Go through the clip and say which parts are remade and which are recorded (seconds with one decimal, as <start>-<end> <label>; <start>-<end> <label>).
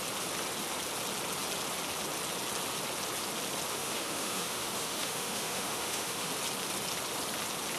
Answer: 0.0-3.7 recorded; 3.7-6.3 remade; 6.3-7.8 recorded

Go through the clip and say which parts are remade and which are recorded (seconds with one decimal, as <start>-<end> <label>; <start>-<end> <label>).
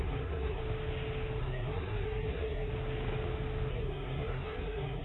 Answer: 0.0-0.6 remade; 0.6-1.4 recorded; 1.4-2.7 remade; 2.7-3.7 recorded; 3.7-5.0 remade